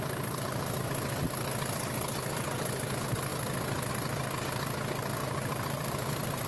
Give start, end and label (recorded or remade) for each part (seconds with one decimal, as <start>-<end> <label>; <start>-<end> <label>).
0.0-5.2 recorded; 5.2-6.1 remade; 6.1-6.5 recorded